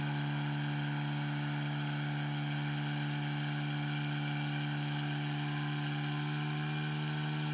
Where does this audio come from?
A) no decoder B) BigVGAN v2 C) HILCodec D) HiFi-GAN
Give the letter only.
A